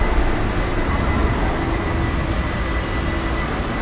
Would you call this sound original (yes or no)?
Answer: yes